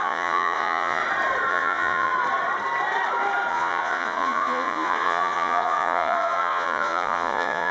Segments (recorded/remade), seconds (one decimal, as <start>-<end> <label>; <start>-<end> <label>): 0.0-1.0 remade; 1.0-1.5 recorded; 1.5-2.1 remade; 2.1-3.5 recorded; 3.5-7.7 remade